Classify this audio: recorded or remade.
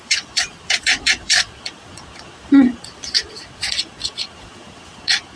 remade